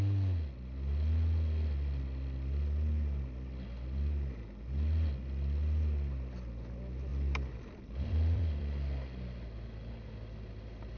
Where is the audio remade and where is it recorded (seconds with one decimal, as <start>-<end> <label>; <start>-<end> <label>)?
0.0-7.1 recorded; 7.1-8.6 remade; 8.6-11.0 recorded